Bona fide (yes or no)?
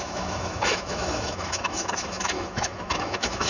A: no